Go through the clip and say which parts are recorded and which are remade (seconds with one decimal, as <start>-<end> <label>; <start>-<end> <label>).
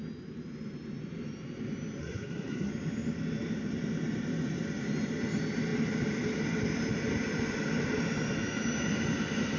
0.0-2.0 recorded; 2.0-2.7 remade; 2.7-9.6 recorded